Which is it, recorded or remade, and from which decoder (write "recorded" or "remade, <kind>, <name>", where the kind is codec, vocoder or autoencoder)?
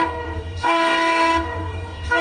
remade, codec, DAC